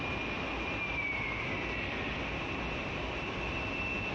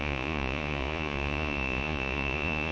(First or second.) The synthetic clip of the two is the second